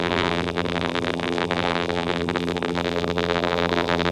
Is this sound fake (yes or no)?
yes